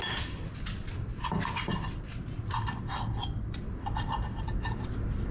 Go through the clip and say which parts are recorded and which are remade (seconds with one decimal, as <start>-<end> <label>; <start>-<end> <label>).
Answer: 0.0-5.3 recorded